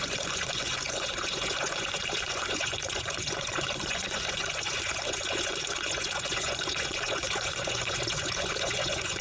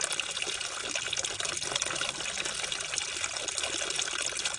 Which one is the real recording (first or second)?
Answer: second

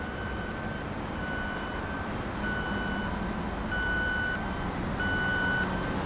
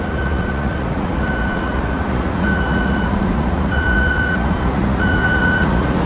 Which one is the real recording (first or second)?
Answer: first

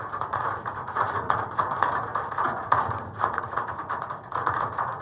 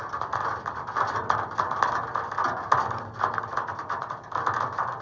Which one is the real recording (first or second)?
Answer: second